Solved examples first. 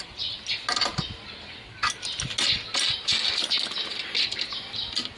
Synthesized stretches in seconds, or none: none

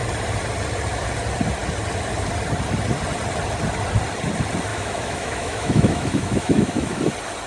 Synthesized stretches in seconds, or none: 4.7-7.0 (autoencoder, DAC-VAE)